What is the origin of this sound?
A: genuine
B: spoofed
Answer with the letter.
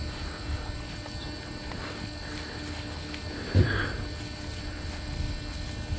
A